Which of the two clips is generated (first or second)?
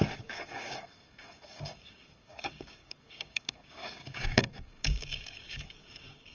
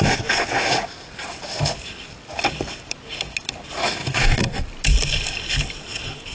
first